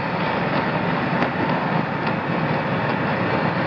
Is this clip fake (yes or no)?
no